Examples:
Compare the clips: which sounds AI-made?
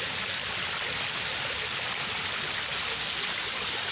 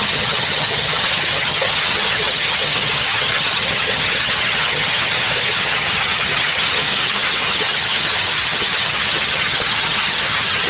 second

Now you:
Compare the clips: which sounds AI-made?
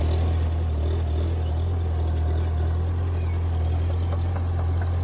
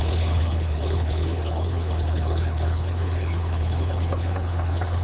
second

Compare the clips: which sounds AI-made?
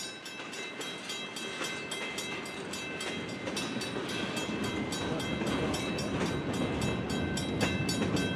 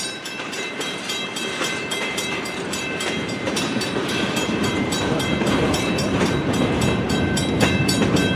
second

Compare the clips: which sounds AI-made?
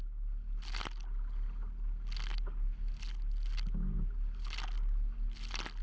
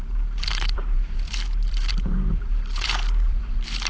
second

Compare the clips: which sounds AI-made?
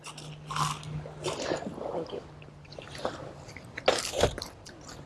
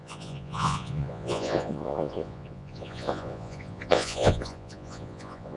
second